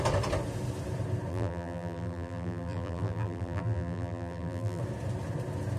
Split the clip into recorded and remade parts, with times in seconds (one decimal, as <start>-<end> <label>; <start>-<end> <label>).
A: 0.0-1.3 recorded; 1.3-4.8 remade; 4.8-5.8 recorded